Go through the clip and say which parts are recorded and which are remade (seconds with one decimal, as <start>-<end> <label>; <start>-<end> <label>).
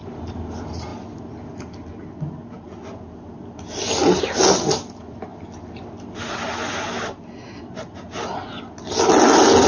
0.0-9.7 recorded